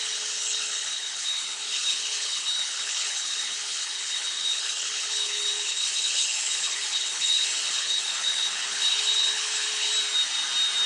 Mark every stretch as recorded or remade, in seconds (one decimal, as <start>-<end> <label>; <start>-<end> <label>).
0.0-9.9 remade; 9.9-10.9 recorded